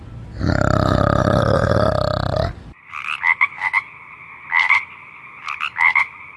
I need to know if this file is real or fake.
real